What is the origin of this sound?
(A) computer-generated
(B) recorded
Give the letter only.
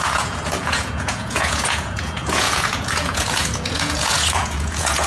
A